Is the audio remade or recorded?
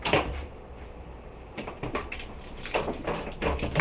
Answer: recorded